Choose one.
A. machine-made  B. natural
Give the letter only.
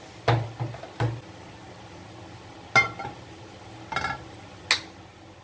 B